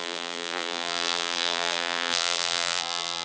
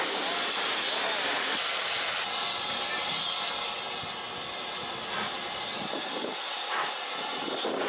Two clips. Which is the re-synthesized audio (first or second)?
first